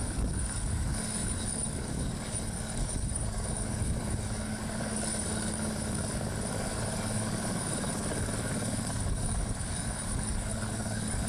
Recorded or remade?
remade